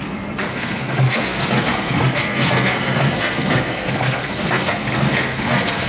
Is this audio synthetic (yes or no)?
yes